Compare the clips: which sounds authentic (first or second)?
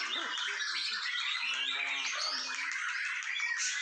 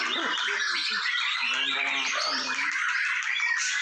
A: first